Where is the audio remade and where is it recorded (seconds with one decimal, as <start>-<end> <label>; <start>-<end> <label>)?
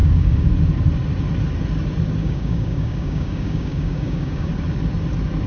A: 0.0-0.5 remade; 0.5-2.2 recorded; 2.2-4.5 remade; 4.5-5.5 recorded